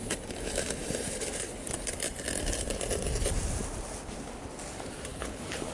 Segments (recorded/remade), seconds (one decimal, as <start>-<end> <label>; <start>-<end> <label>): 0.0-5.1 recorded; 5.1-5.7 remade